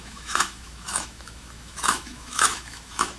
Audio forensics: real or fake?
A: fake